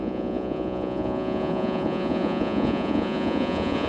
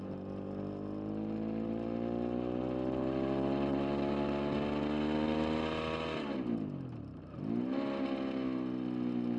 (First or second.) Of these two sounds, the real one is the second